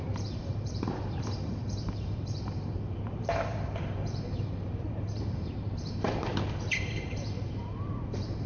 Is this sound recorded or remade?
remade